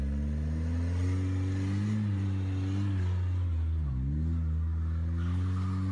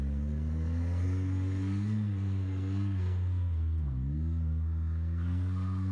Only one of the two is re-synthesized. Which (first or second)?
second